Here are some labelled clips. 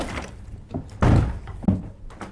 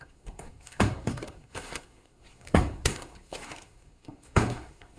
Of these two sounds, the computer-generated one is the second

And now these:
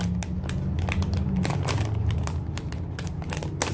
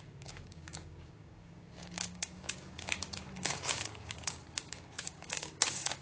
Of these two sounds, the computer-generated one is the second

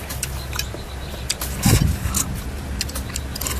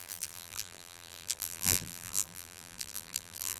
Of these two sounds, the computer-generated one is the second